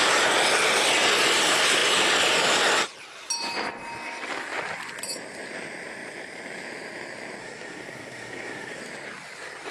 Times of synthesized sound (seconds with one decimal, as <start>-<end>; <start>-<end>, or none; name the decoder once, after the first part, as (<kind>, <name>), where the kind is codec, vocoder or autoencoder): 7.4-8.8 (codec, SNAC)